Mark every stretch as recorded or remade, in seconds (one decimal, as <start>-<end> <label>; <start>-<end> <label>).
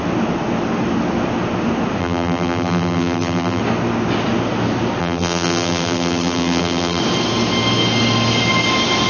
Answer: 0.0-2.0 recorded; 2.0-3.6 remade; 3.6-5.0 recorded; 5.0-7.0 remade; 7.0-9.1 recorded